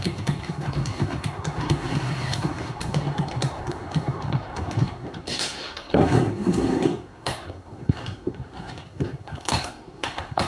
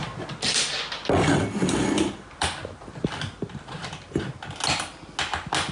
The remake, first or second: first